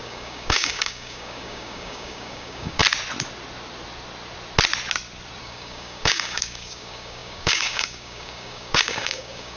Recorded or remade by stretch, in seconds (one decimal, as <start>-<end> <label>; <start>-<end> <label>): 0.0-2.8 remade; 2.8-5.4 recorded; 5.4-9.6 remade